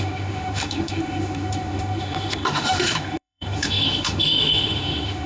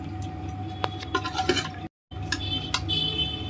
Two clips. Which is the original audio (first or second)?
second